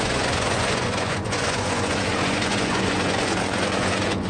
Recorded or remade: remade